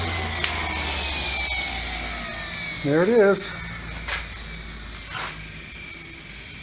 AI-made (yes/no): no